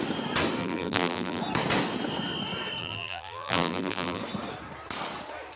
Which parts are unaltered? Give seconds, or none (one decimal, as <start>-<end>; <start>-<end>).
0.0-0.6; 1.4-2.8; 4.2-5.6